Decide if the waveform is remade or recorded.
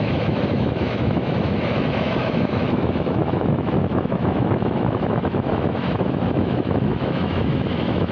remade